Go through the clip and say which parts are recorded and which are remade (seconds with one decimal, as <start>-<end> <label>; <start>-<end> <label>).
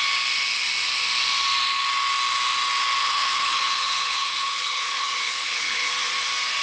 0.0-3.0 recorded; 3.0-5.9 remade; 5.9-6.6 recorded